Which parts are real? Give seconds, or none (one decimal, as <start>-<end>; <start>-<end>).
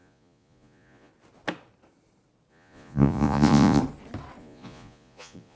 1.1-2.5; 3.8-4.4